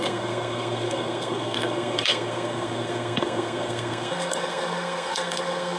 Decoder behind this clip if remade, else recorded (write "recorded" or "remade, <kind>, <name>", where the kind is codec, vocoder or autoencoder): remade, codec, SNAC